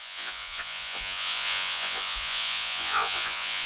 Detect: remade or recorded remade